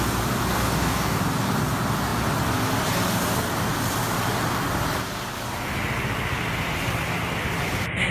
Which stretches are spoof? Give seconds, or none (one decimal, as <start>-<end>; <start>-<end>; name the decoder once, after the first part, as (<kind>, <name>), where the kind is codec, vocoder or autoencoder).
0.5-1.2 (codec, DAC)